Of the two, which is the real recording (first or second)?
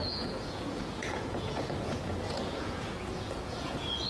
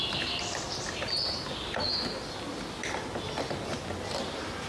second